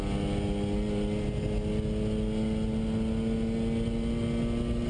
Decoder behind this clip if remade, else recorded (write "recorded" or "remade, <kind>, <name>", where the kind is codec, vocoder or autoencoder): recorded